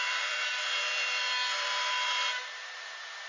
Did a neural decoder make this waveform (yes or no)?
yes